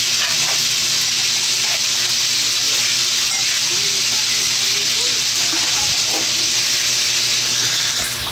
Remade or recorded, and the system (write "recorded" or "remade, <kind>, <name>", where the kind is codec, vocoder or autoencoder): recorded